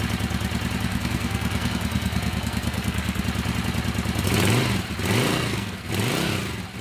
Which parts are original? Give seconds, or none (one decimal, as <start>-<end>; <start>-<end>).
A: 0.0-0.9; 3.2-5.3; 5.9-6.8